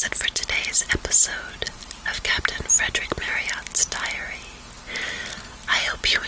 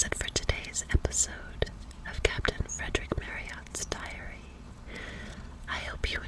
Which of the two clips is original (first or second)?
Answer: first